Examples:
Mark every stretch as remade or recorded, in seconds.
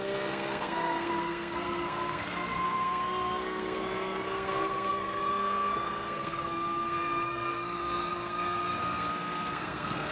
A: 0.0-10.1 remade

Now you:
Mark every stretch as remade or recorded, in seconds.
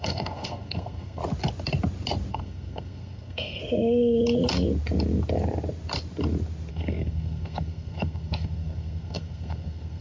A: 0.0-1.2 remade; 1.2-2.3 recorded; 2.3-3.6 remade; 3.6-6.7 recorded; 6.7-10.0 remade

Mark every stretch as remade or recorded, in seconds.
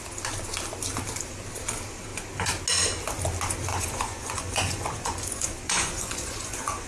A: 0.0-3.7 recorded; 3.7-6.9 remade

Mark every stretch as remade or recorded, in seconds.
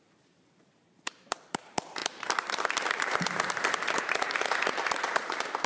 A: 0.0-5.7 remade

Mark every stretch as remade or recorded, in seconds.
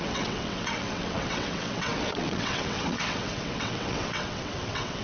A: 0.0-5.0 remade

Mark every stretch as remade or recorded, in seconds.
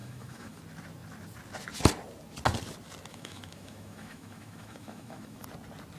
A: 0.0-0.6 remade; 0.6-3.1 recorded; 3.1-5.4 remade; 5.4-6.0 recorded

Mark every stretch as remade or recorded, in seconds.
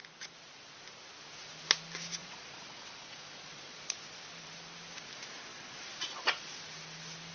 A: 0.0-2.2 recorded; 2.2-4.2 remade; 4.2-5.5 recorded; 5.5-6.6 remade; 6.6-7.3 recorded